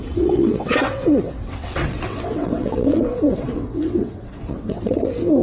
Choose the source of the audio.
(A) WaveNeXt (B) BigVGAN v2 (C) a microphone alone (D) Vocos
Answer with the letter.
A